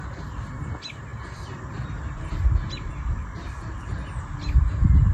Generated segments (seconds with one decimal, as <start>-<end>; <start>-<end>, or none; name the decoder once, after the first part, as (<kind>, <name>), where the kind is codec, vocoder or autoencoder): none